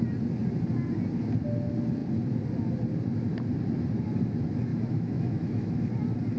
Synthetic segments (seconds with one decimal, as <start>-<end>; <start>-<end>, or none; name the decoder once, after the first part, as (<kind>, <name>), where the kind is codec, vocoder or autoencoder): 4.7-5.7 (autoencoder, DAC-VAE)